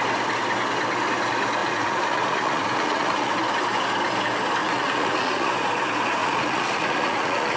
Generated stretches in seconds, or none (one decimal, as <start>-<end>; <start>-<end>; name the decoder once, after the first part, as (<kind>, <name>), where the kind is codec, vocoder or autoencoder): 1.6-3.3 (vocoder, Vocos); 4.6-5.5; 6.2-7.6